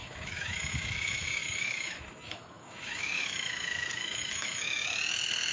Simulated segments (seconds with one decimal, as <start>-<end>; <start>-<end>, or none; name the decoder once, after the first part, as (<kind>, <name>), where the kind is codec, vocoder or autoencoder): 0.0-4.8 (autoencoder, DAC-VAE)